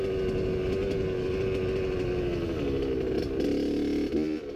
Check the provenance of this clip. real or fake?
real